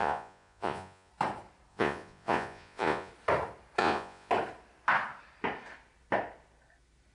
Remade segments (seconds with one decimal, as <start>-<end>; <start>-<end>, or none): 0.0-1.1; 1.7-3.1; 3.8-4.3